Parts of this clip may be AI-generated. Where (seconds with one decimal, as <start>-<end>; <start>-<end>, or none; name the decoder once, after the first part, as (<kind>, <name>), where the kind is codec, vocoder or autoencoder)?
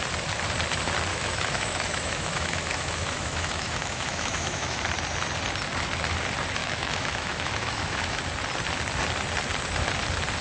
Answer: 1.1-4.8 (autoencoder, DAC-VAE); 6.6-8.2